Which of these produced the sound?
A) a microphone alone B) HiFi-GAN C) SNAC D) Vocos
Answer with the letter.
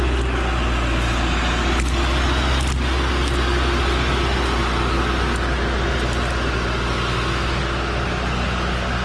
A